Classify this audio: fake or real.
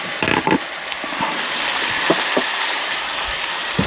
real